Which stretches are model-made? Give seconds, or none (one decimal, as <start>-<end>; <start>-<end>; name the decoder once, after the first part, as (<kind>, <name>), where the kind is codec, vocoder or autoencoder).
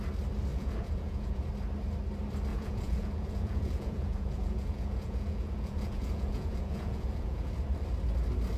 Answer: 0.5-1.5 (vocoder, Vocos); 2.5-7.5